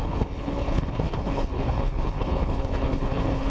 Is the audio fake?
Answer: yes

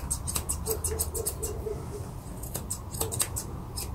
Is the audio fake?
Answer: no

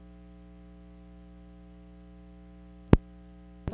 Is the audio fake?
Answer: yes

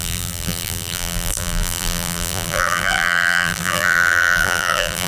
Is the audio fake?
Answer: yes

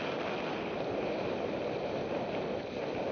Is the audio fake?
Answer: no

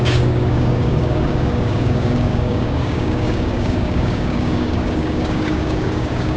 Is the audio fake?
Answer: yes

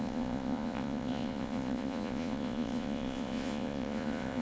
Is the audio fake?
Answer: yes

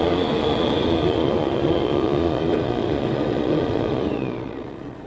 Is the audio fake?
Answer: yes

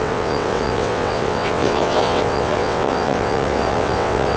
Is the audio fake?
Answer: yes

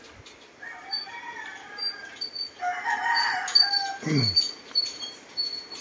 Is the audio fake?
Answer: no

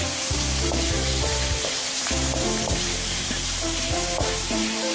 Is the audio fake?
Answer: yes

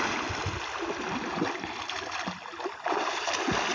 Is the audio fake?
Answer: no